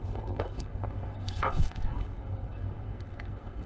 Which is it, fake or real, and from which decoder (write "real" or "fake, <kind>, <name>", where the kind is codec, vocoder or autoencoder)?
fake, codec, SNAC